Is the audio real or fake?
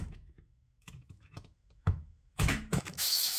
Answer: fake